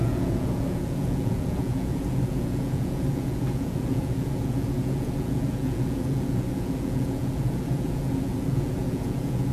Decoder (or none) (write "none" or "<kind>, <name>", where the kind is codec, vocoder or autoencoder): vocoder, Vocos